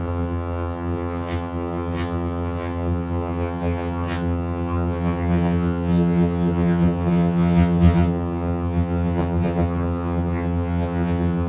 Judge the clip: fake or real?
fake